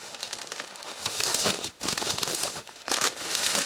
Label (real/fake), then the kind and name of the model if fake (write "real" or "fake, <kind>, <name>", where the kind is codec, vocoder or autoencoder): fake, autoencoder, DAC-VAE